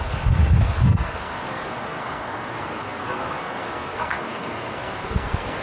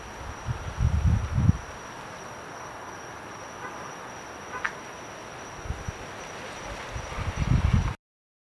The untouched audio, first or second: second